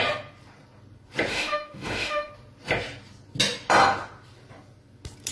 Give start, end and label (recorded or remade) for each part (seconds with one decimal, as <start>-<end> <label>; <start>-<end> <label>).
0.0-1.3 recorded; 1.3-2.3 remade; 2.3-5.3 recorded